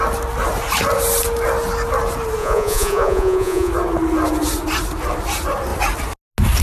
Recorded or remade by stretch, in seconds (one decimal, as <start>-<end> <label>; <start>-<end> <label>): 0.0-2.4 recorded; 2.4-3.7 remade; 3.7-6.6 recorded